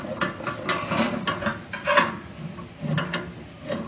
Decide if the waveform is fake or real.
real